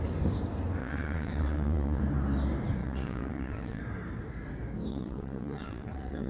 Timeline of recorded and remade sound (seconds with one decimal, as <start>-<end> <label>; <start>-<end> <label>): 0.0-0.8 recorded; 0.8-2.0 remade; 2.0-2.8 recorded; 2.8-3.8 remade; 3.8-4.9 recorded; 4.9-6.3 remade